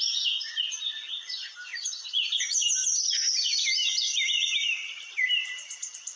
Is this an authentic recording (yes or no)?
no